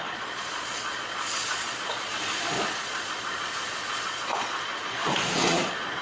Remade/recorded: remade